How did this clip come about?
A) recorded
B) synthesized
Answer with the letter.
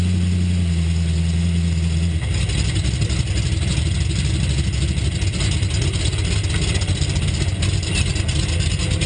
A